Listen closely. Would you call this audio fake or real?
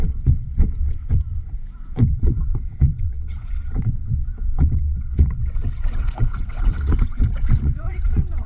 fake